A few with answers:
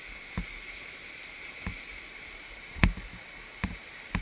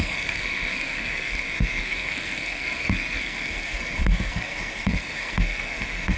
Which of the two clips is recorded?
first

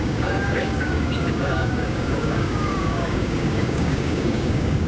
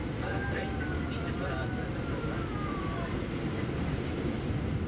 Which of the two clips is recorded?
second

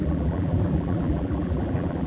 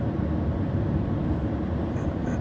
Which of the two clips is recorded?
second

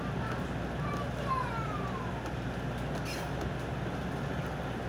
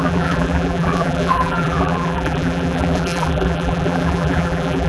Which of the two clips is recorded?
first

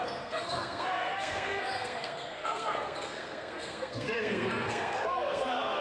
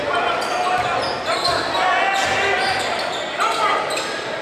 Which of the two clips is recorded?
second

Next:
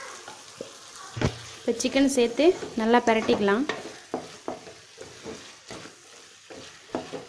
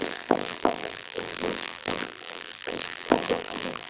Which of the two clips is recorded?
first